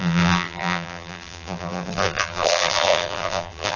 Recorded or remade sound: remade